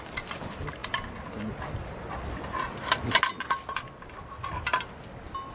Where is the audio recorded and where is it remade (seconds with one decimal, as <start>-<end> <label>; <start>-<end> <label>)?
0.0-5.5 recorded